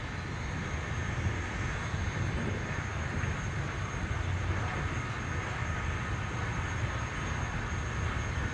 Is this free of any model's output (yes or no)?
yes